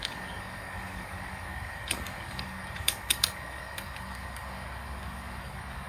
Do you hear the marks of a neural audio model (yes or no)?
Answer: yes